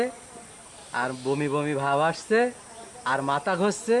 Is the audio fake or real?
real